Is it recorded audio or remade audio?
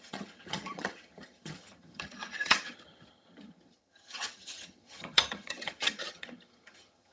remade